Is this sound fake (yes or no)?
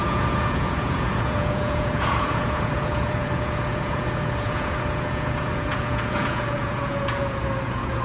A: yes